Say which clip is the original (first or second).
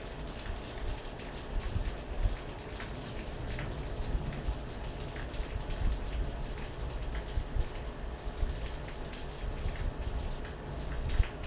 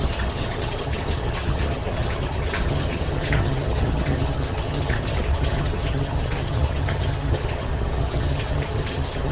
first